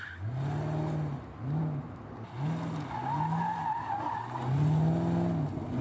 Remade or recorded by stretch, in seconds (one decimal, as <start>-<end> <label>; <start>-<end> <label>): 0.0-5.8 recorded